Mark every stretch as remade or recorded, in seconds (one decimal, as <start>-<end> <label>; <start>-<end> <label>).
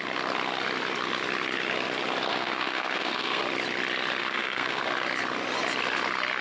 0.0-2.3 recorded; 2.3-3.4 remade; 3.4-4.2 recorded; 4.2-4.8 remade; 4.8-6.4 recorded